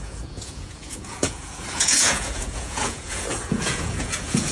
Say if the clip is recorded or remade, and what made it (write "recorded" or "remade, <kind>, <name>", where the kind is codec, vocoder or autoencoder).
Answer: remade, vocoder, Vocos